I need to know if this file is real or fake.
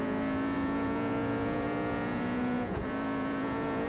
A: fake